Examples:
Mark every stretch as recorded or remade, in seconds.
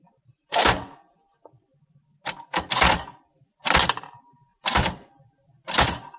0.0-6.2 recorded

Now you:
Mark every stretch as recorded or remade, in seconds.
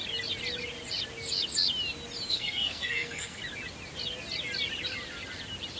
0.0-2.3 recorded; 2.3-3.4 remade; 3.4-5.8 recorded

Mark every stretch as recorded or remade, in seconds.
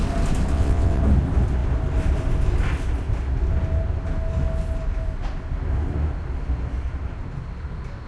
0.0-0.5 recorded; 0.5-1.0 remade; 1.0-8.1 recorded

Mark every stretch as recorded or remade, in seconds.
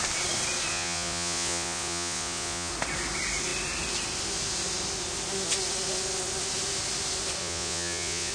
0.0-0.7 recorded; 0.7-2.7 remade; 2.7-7.4 recorded; 7.4-8.3 remade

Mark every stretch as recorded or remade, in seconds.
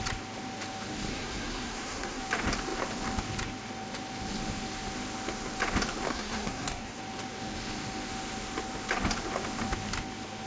0.0-1.1 recorded; 1.1-2.2 remade; 2.2-6.1 recorded; 6.1-7.0 remade; 7.0-10.5 recorded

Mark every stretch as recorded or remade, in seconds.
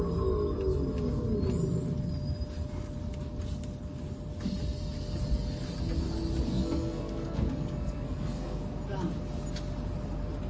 0.0-6.5 recorded; 6.5-8.6 remade; 8.6-10.5 recorded